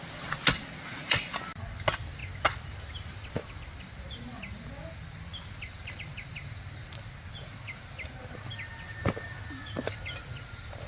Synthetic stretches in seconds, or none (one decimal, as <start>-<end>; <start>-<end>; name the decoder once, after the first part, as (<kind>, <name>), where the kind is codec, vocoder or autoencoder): none